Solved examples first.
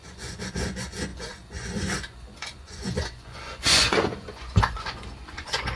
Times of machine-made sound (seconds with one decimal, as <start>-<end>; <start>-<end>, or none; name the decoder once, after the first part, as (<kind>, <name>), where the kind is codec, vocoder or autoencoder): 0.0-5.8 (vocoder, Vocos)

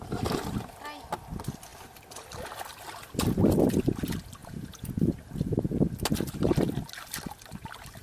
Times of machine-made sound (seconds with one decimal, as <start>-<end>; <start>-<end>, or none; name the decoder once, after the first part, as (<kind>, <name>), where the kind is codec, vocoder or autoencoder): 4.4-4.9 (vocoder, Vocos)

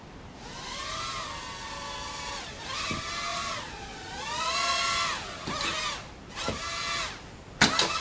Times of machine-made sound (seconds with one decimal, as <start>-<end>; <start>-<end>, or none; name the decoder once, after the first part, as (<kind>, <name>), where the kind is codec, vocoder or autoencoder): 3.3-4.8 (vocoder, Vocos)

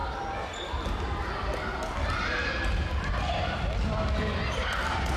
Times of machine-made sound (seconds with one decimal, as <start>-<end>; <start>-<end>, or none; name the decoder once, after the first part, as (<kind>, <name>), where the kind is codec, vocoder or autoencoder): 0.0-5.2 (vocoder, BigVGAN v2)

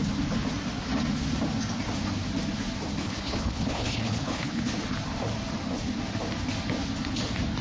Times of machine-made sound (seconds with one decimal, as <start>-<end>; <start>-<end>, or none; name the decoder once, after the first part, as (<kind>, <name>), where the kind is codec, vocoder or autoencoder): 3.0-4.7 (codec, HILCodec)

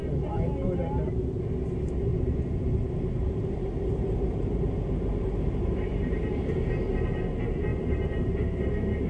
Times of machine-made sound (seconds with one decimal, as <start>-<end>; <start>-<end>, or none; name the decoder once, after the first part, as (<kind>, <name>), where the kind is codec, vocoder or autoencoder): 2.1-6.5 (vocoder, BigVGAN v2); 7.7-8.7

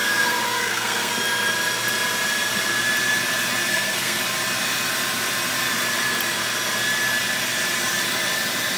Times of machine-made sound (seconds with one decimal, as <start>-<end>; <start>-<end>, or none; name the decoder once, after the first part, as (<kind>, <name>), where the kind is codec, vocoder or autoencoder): 0.0-1.1 (codec, SNAC); 3.7-4.2